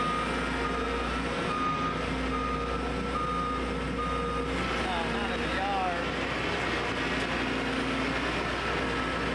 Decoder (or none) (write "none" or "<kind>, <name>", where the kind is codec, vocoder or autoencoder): none